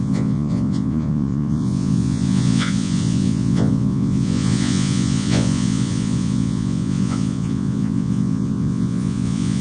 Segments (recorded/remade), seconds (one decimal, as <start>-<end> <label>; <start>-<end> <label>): 0.0-9.6 remade